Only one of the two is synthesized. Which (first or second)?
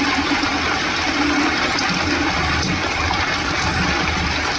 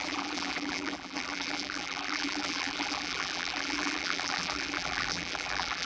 second